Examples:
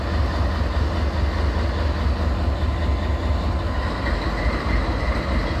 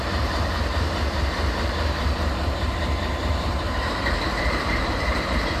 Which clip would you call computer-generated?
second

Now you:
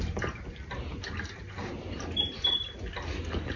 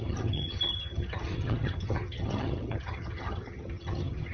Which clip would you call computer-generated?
second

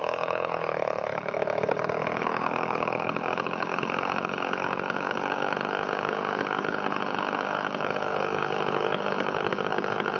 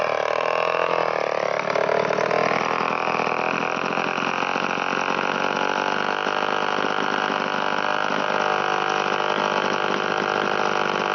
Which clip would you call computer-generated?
first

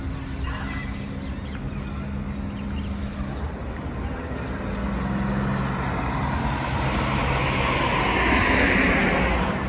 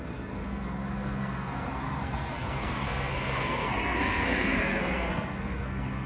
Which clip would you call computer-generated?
second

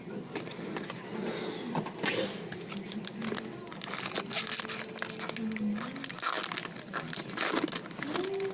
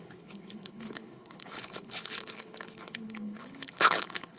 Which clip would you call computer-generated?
second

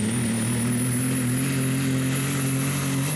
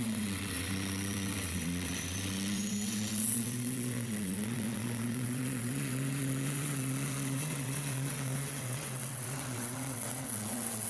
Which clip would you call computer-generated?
second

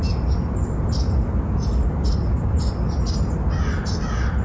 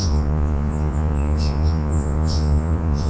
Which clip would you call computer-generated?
second